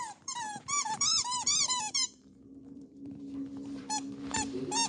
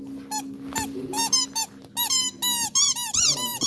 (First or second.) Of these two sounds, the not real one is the first